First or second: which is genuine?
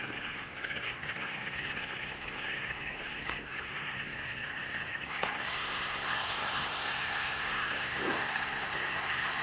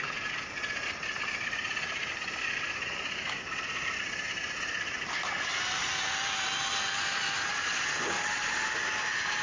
second